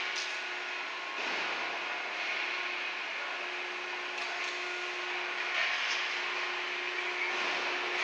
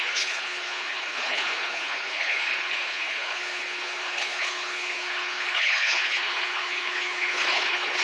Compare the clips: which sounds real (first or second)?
first